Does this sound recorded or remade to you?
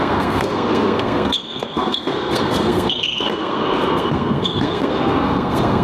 remade